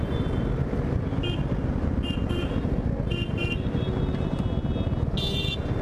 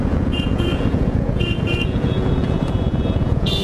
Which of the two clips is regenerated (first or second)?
second